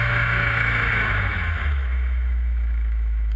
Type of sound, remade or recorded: remade